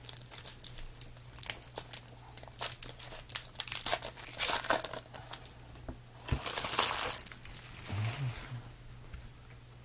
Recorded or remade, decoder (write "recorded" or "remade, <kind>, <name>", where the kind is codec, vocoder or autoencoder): recorded